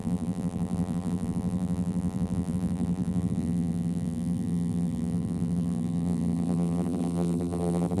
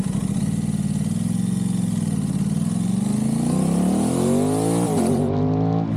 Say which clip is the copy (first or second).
first